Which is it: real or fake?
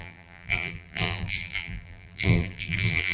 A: fake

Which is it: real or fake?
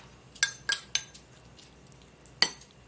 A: real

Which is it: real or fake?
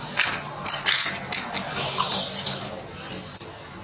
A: real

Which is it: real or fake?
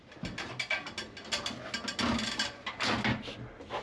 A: real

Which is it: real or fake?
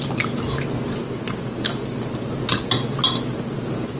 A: real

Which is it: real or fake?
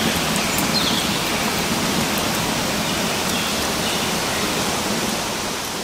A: real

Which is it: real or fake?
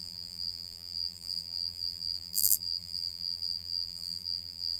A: fake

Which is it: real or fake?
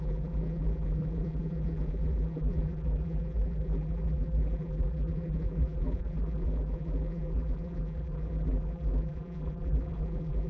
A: fake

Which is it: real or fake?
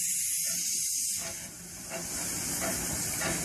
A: real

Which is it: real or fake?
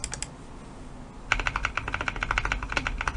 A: real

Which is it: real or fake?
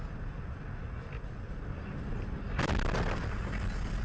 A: real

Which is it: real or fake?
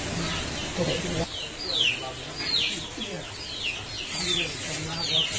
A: real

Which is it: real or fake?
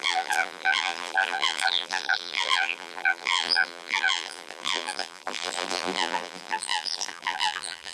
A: fake